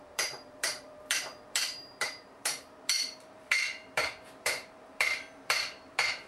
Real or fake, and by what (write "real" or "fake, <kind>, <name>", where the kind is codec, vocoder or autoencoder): fake, vocoder, BigVGAN v2